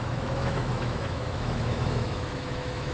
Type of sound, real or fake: fake